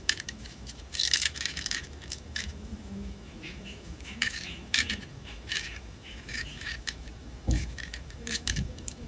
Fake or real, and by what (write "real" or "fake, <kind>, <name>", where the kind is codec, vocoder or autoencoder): fake, autoencoder, DAC-VAE